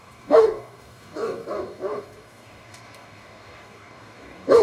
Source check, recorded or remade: remade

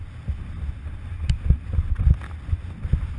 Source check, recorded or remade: recorded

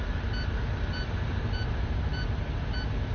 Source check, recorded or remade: recorded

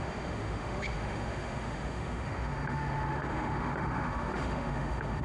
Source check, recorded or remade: remade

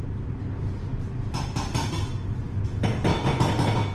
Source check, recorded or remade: recorded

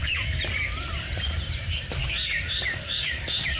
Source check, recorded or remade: remade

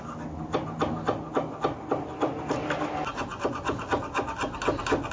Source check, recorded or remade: recorded